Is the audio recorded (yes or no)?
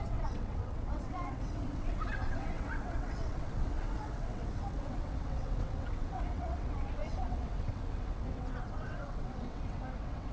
no